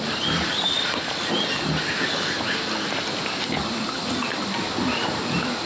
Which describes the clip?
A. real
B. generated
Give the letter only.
A